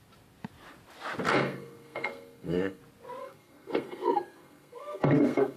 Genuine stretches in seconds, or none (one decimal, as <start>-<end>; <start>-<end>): 0.0-1.3; 2.8-3.2